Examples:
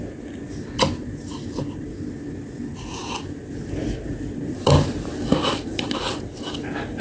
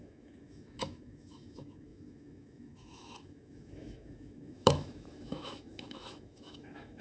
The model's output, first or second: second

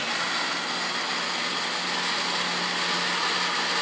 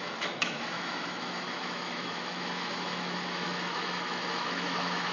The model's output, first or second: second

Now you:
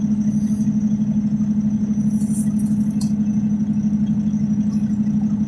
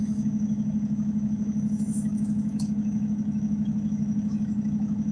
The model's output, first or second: second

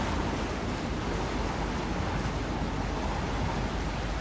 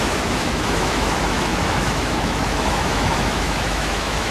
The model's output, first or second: second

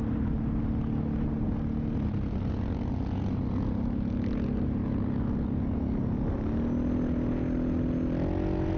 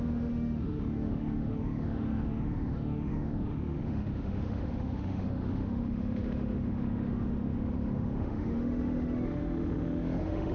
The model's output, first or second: second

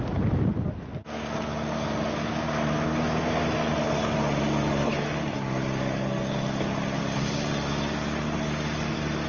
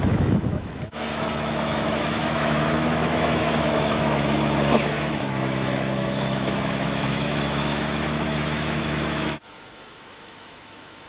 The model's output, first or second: second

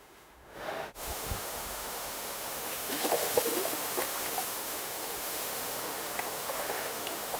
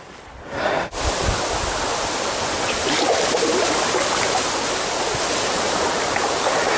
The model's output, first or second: first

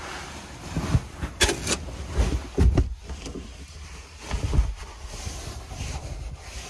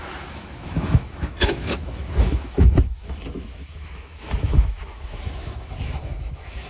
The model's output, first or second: second